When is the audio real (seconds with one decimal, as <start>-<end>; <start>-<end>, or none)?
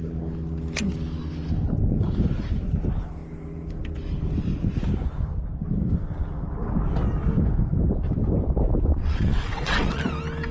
0.0-8.9; 10.0-10.5